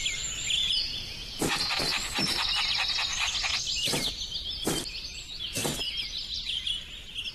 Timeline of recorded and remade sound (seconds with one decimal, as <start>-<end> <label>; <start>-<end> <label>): 0.0-0.6 recorded; 0.6-1.4 remade; 1.4-7.3 recorded